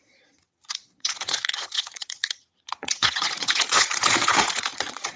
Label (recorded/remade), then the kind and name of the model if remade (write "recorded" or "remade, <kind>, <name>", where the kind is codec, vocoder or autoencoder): remade, vocoder, Vocos